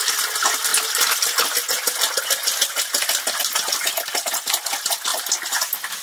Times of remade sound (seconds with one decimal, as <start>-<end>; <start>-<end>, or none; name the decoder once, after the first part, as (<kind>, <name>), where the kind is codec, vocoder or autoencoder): none